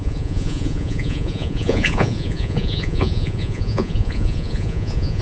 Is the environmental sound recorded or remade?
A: remade